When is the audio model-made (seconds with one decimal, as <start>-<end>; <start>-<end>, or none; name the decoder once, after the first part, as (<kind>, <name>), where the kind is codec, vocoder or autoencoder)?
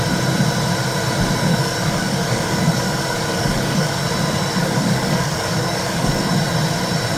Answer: 1.5-4.0 (codec, DAC); 4.6-6.2